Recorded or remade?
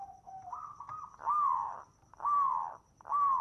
recorded